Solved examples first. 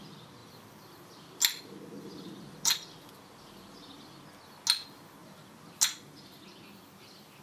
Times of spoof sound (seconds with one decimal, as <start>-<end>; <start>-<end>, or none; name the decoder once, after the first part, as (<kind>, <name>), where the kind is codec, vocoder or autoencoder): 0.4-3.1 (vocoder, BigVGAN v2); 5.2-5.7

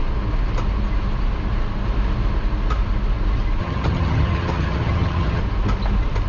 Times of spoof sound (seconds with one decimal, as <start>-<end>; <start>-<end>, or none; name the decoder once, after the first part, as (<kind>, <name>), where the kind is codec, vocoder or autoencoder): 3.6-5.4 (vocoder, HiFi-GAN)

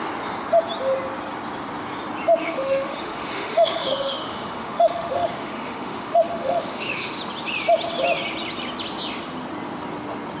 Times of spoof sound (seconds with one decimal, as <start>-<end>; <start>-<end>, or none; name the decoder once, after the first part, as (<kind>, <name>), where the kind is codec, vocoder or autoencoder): 2.4-7.2 (autoencoder, DAC-VAE)